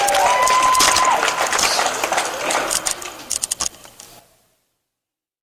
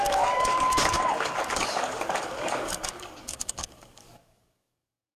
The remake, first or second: second